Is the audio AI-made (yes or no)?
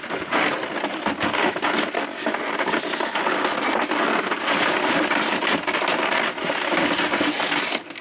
no